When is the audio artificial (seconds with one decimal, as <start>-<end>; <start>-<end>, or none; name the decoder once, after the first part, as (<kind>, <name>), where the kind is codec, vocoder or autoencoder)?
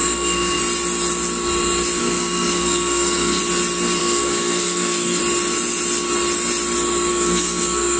0.0-0.6 (codec, SNAC); 2.0-3.4; 4.0-5.2; 7.1-8.0